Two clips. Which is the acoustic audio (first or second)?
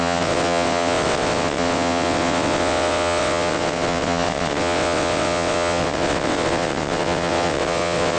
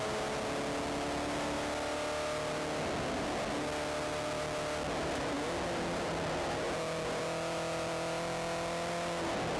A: second